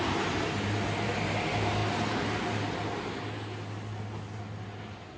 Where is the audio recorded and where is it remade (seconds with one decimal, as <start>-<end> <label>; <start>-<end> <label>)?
0.0-5.2 recorded